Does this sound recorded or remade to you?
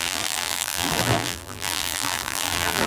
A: remade